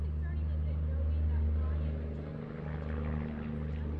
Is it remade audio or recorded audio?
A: recorded